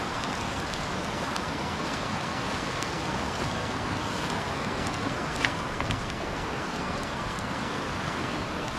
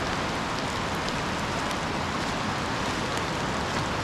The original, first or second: second